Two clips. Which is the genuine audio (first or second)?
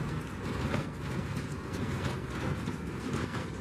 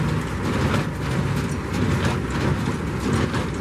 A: second